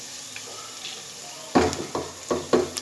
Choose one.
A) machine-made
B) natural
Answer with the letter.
B